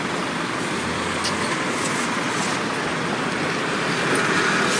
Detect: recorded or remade recorded